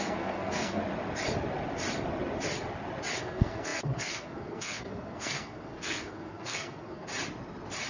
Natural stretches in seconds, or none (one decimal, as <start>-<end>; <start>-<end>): 0.8-3.2; 7.1-7.9